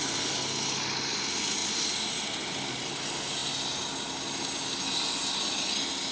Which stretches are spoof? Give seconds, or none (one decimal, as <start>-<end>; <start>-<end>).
none

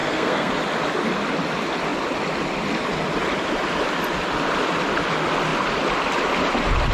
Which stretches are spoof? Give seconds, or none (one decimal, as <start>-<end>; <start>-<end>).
0.0-0.5

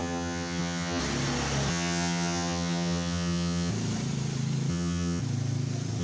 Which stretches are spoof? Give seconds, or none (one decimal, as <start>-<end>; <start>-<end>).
0.0-1.0; 1.7-3.7; 4.7-5.2

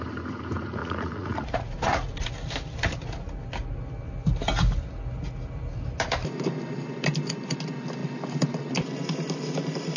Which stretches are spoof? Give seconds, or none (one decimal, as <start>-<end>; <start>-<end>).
0.8-2.3

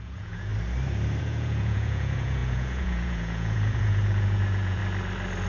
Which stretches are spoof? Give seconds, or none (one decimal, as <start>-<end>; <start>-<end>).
0.0-0.5; 1.2-4.8

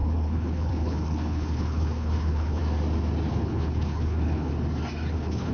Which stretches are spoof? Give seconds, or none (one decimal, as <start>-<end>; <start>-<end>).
0.0-2.6; 3.3-4.5; 5.1-5.5

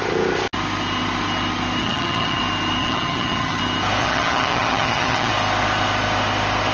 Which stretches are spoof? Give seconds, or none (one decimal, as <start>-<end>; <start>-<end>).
1.8-2.4; 2.8-3.6; 4.0-5.3